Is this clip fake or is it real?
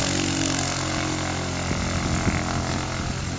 real